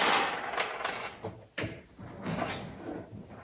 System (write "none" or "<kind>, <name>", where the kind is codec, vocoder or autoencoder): none